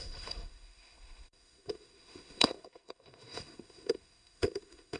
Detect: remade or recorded remade